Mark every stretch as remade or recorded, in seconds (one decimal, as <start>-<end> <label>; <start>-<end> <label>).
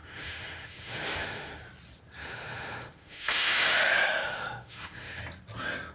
0.0-1.6 remade; 1.6-2.2 recorded; 2.2-5.2 remade; 5.2-5.9 recorded